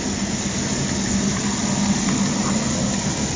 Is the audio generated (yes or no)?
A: no